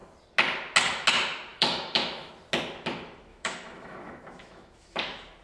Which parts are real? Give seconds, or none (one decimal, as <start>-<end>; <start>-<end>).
0.0-1.5; 2.3-3.3; 5.0-5.4